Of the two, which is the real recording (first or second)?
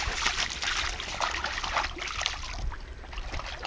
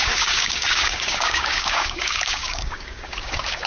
first